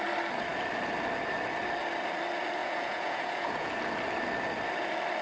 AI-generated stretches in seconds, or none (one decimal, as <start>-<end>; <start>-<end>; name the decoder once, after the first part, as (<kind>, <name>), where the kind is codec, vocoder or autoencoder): 2.6-3.7 (vocoder, Vocos)